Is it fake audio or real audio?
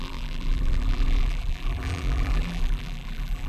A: fake